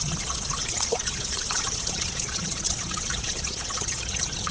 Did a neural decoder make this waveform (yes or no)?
yes